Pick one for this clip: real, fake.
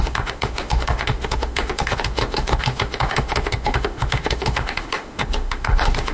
fake